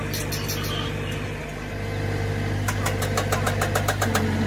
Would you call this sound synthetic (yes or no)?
no